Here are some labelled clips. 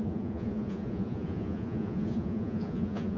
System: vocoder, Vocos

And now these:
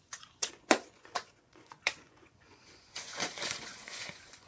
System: vocoder, Vocos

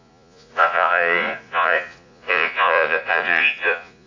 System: vocoder, Vocos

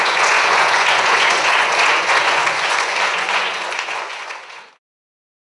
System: vocoder, Vocos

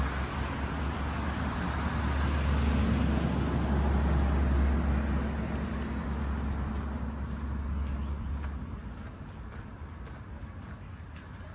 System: none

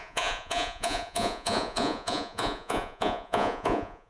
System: vocoder, Vocos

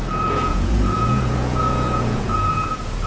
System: vocoder, Vocos